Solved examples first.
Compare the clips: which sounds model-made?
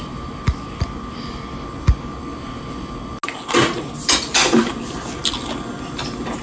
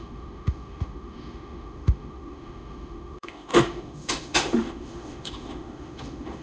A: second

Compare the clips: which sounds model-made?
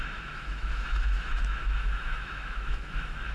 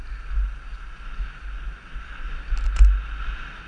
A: first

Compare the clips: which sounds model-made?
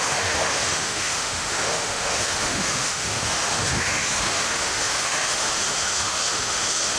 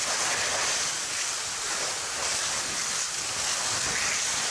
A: first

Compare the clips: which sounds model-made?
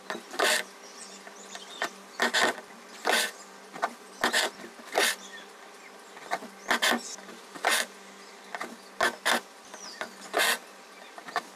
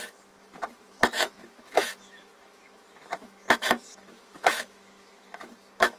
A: second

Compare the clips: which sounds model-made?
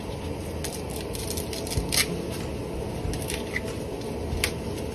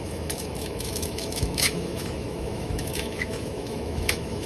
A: second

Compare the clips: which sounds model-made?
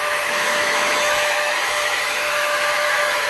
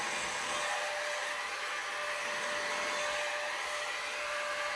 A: first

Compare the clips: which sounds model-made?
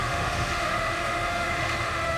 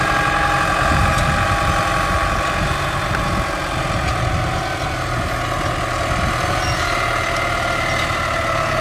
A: first